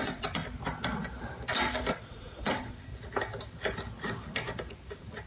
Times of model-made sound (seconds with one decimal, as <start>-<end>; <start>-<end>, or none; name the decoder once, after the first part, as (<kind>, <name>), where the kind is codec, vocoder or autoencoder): 0.0-0.4 (vocoder, WaveNeXt); 2.1-2.9